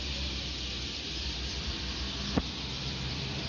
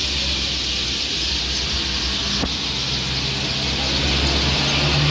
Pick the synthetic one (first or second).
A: first